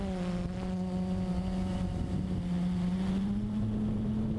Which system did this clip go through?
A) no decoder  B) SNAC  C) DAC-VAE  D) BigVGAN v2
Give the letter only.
A